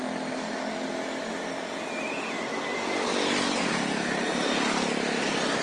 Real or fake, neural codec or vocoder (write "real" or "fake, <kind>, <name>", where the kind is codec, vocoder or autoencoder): real